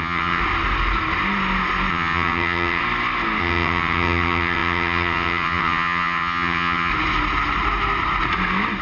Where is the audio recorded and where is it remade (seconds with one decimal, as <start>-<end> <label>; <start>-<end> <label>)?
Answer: 0.0-0.4 remade; 0.4-1.9 recorded; 1.9-2.8 remade; 2.8-3.4 recorded; 3.4-6.9 remade; 6.9-8.8 recorded